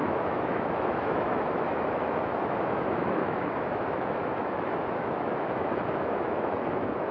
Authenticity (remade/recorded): remade